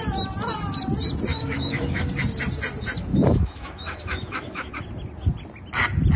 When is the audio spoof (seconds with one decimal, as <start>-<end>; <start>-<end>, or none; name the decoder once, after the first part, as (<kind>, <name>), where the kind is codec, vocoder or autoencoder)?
1.3-2.1 (autoencoder, DAC-VAE); 3.1-4.7